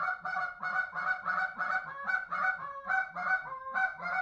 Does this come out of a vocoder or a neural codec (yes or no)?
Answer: no